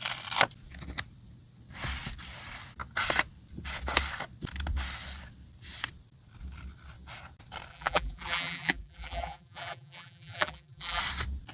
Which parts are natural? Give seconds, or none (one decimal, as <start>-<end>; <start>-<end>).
0.0-7.7; 11.0-11.5